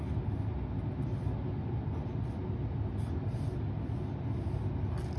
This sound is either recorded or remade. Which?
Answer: recorded